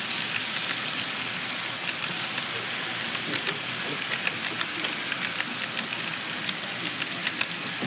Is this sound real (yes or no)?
yes